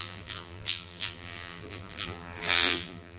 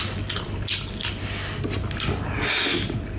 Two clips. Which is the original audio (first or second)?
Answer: second